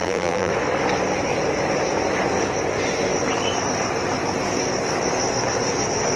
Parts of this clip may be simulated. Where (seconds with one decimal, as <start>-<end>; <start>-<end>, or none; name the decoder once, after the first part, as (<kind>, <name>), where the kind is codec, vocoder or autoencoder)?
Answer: 0.0-0.5 (vocoder, BigVGAN v2)